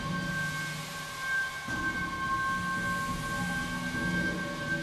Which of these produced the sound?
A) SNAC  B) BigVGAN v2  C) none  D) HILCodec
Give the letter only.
C